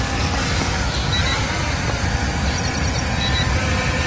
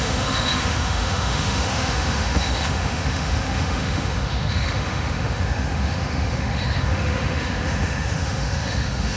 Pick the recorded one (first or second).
first